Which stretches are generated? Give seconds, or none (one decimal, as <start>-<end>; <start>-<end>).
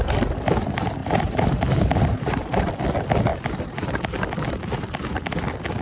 1.0-2.7; 3.3-4.2